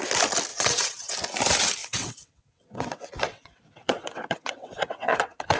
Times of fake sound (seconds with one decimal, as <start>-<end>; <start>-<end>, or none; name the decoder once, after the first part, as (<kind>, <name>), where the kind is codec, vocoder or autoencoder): 0.5-1.1 (vocoder, WaveNeXt); 1.8-5.6